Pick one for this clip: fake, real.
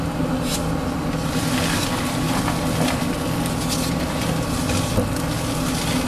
real